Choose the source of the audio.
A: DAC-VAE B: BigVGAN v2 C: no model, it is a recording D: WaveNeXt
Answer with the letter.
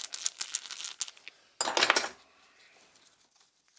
C